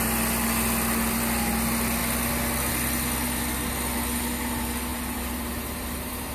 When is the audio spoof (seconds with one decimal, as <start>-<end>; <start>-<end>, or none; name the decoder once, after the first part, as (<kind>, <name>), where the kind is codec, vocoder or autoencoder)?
4.9-6.3 (vocoder, BigVGAN v2)